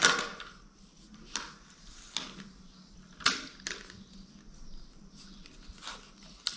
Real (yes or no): yes